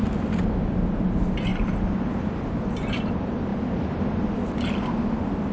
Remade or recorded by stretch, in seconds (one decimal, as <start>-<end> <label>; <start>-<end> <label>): 0.0-5.5 recorded

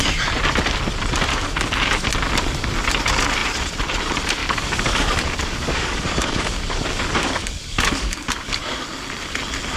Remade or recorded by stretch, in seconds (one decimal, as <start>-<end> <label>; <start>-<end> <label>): 0.0-1.3 recorded; 1.3-2.1 remade; 2.1-4.4 recorded; 4.4-8.6 remade; 8.6-9.8 recorded

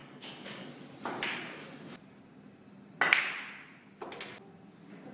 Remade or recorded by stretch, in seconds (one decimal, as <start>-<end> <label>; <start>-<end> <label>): 0.0-0.7 remade; 0.7-5.1 recorded

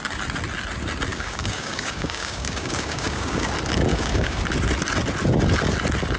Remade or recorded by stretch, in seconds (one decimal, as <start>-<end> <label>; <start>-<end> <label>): 0.0-1.1 recorded; 1.1-3.5 remade; 3.5-3.9 recorded; 3.9-4.4 remade; 4.4-6.2 recorded

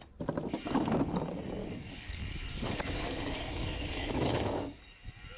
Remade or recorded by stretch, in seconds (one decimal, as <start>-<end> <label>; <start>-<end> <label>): 0.0-1.6 recorded; 1.6-4.8 remade; 4.8-5.4 recorded

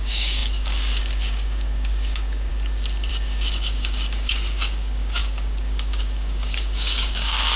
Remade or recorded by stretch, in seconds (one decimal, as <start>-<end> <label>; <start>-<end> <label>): 0.0-2.5 remade; 2.5-3.1 recorded; 3.1-7.6 remade

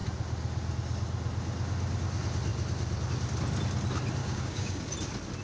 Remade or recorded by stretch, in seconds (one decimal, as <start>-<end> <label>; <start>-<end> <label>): 0.0-4.2 recorded; 4.2-4.8 remade; 4.8-5.4 recorded

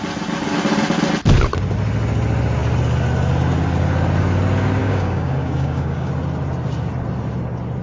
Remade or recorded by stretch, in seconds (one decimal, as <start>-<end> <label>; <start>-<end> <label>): 0.0-4.8 recorded; 4.8-6.1 remade; 6.1-7.8 recorded